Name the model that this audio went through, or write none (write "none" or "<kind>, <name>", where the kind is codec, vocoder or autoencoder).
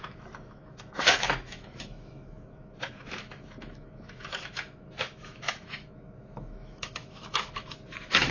autoencoder, DAC-VAE